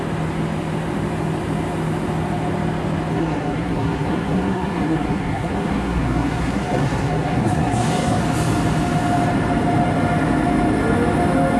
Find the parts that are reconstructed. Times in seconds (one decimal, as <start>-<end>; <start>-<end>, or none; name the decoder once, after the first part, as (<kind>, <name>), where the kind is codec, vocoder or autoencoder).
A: 3.1-8.2 (codec, SNAC)